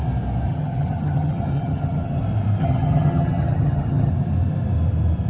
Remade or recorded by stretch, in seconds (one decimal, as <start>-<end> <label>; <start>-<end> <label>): 0.0-0.5 recorded; 0.5-2.2 remade; 2.2-2.6 recorded; 2.6-4.1 remade; 4.1-5.3 recorded